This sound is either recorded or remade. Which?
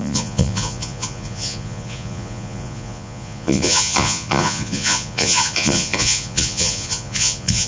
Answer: remade